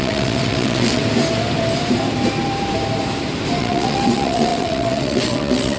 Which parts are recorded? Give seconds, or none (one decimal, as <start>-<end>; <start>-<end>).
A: 1.0-3.6